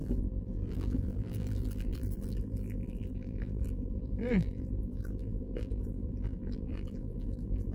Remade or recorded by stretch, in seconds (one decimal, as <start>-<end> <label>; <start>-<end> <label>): 0.0-7.7 remade